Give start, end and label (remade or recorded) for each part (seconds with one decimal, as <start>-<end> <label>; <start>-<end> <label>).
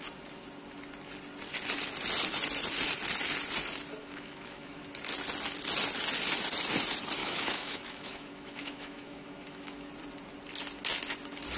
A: 0.0-4.0 recorded; 4.0-4.8 remade; 4.8-7.2 recorded; 7.2-9.9 remade; 9.9-11.6 recorded